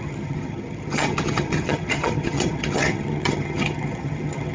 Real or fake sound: fake